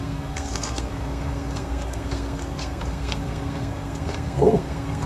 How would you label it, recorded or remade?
remade